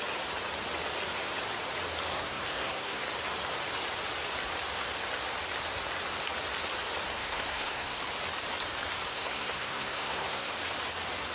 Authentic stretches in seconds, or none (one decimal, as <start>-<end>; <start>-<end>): 0.0-2.1; 3.0-7.2; 8.0-9.1; 10.5-11.3

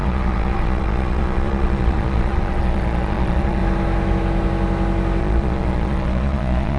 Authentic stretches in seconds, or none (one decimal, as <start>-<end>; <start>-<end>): 3.6-5.2

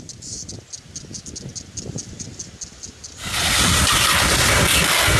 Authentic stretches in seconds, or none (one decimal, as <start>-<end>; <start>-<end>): 0.0-5.2

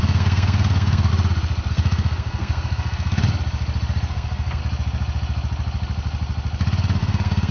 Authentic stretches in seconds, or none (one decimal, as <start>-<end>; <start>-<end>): 1.1-1.7; 3.2-4.1; 4.6-7.0

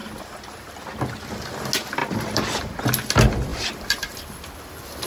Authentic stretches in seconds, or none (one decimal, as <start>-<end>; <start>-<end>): 0.0-2.0; 2.7-3.5

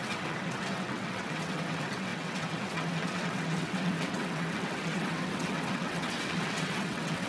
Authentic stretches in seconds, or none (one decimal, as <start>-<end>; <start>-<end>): none